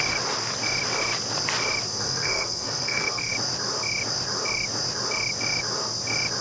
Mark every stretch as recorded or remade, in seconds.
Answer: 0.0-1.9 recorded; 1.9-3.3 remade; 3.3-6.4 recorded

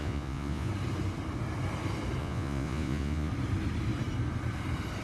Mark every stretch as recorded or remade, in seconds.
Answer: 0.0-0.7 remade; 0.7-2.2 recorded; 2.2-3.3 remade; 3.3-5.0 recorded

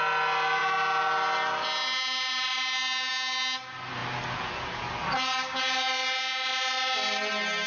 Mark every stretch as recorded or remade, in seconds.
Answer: 0.0-7.7 recorded

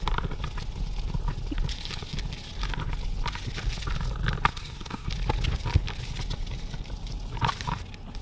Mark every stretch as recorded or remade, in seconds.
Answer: 0.0-4.5 recorded; 4.5-5.1 remade; 5.1-8.2 recorded

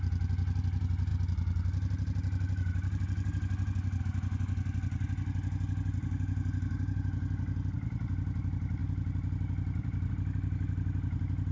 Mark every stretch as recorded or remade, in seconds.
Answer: 0.0-11.5 recorded